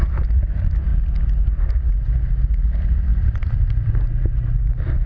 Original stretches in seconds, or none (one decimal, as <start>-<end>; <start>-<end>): 0.0-3.1; 3.9-5.1